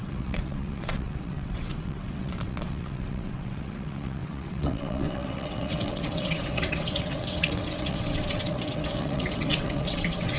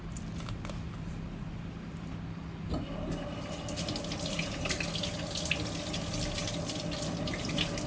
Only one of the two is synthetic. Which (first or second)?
first